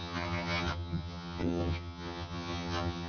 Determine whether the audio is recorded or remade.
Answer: remade